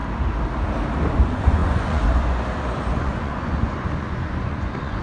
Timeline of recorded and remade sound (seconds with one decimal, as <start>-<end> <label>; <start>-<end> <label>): 0.0-1.1 recorded; 1.1-5.0 remade